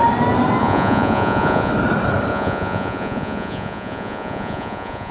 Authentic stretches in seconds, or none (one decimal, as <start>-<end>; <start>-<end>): 0.0-0.6; 1.7-2.3